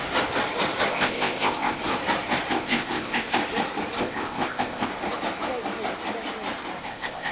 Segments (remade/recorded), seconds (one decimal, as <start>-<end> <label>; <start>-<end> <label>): 0.0-0.9 recorded; 0.9-1.8 remade; 1.8-2.5 recorded; 2.5-3.4 remade; 3.4-4.0 recorded; 4.0-4.9 remade; 4.9-6.8 recorded; 6.8-7.3 remade